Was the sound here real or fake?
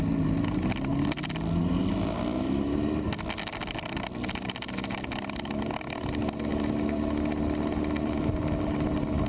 real